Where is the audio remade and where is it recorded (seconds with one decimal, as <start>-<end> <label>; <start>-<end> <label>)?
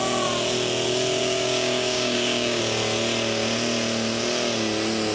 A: 0.0-1.2 recorded; 1.2-2.6 remade; 2.6-5.1 recorded